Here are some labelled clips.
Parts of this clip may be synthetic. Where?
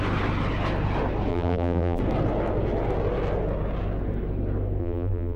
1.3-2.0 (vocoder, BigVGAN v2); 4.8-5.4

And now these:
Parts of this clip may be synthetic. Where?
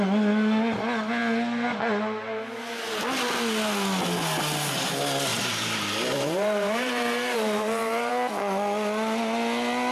5.3-8.1 (vocoder, BigVGAN v2)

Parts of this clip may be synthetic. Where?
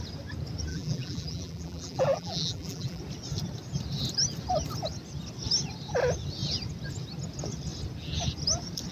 0.7-3.0 (vocoder, BigVGAN v2)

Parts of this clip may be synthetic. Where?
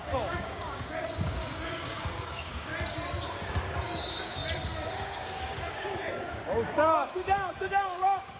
0.0-2.7 (codec, DAC); 3.5-4.4; 4.9-8.4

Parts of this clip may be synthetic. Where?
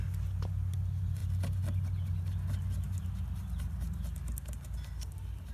none